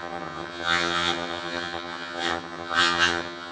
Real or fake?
fake